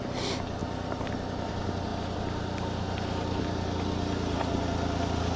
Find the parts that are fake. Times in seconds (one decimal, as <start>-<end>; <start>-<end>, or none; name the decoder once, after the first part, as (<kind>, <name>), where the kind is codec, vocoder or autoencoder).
none

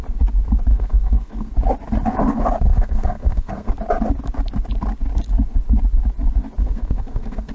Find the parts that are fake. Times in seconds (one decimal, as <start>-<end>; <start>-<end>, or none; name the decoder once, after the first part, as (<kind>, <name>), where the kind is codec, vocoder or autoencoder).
0.7-1.5 (codec, SNAC); 2.7-3.7; 6.6-7.5

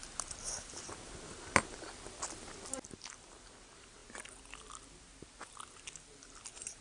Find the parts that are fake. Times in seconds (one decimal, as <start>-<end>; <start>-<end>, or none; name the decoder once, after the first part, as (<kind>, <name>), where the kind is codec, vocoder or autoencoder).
none

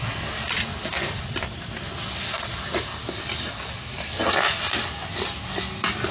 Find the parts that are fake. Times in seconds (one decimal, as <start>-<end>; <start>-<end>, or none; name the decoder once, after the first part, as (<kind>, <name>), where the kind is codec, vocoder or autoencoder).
none

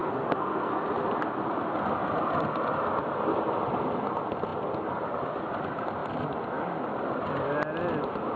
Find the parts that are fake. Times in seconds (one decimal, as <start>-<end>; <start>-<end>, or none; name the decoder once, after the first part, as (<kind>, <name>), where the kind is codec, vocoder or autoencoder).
0.0-0.8 (codec, SNAC)